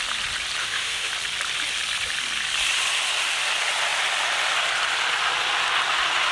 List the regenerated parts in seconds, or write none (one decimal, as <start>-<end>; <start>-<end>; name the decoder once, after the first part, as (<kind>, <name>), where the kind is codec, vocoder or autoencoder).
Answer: 0.6-1.1 (autoencoder, DAC-VAE)